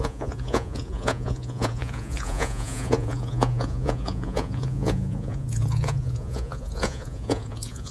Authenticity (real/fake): fake